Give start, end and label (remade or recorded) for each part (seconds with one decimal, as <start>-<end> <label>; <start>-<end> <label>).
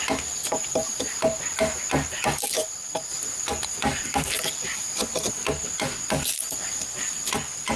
0.0-0.8 recorded; 0.8-1.8 remade; 1.8-7.8 recorded